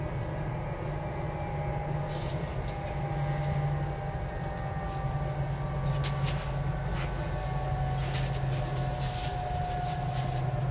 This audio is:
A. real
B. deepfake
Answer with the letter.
A